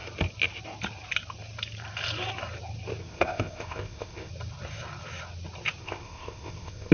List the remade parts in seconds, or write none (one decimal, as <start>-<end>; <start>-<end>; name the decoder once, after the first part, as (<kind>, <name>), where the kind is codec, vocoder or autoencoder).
3.0-4.3 (codec, ZipCodec); 5.8-6.9